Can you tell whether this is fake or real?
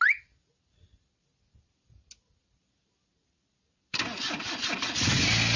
real